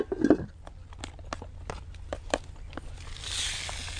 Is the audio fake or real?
real